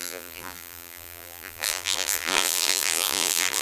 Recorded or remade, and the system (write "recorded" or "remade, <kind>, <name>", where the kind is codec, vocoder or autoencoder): remade, vocoder, BigVGAN v2